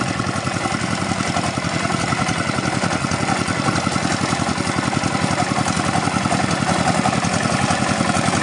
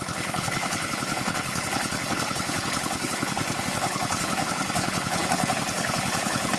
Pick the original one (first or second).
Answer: first